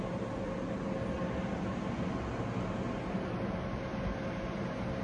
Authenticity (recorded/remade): recorded